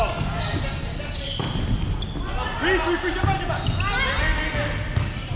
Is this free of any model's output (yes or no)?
yes